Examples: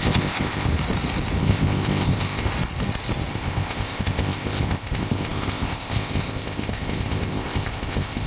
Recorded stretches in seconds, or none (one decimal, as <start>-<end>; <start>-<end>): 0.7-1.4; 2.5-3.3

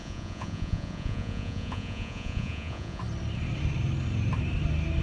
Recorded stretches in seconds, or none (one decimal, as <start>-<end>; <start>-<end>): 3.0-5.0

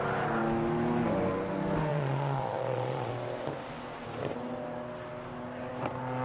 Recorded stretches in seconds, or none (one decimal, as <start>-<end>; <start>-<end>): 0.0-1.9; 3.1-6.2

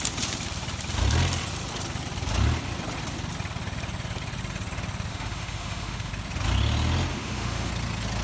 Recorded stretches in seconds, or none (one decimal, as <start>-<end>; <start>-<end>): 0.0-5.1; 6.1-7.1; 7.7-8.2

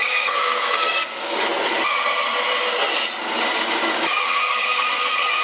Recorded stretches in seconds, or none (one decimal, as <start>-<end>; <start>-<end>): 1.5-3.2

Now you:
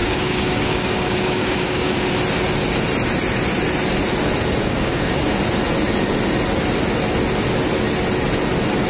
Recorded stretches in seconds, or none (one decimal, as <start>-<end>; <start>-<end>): 2.1-4.6; 5.1-8.9

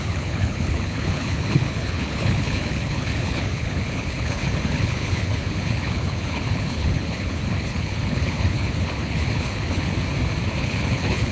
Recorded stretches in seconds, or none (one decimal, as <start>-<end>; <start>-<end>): 9.9-10.6